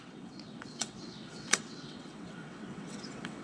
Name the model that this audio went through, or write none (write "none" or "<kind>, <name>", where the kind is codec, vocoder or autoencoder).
vocoder, WaveNeXt